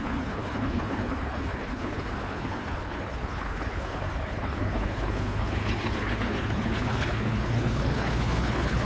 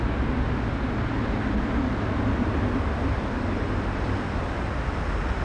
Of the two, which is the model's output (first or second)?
first